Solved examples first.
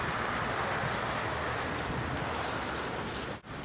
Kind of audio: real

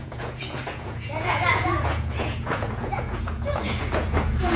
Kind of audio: fake